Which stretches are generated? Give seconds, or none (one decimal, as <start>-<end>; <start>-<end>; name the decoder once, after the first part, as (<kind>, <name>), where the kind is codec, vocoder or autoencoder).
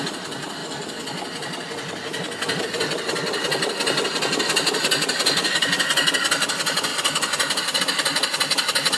5.4-6.0 (vocoder, Vocos)